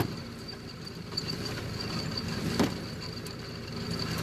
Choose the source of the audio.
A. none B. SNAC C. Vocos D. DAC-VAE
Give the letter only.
A